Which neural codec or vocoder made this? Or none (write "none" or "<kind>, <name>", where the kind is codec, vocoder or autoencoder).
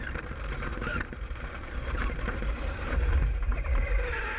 vocoder, BigVGAN v2